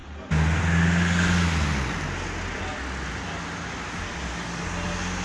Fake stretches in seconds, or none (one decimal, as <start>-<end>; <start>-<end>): none